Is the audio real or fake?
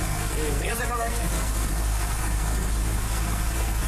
fake